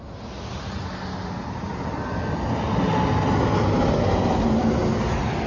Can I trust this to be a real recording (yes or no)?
yes